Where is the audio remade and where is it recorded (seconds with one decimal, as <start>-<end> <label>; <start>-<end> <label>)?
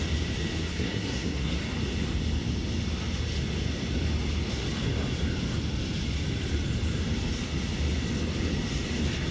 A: 0.0-0.6 recorded; 0.6-1.6 remade; 1.6-9.3 recorded